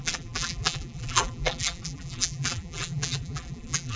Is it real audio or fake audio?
fake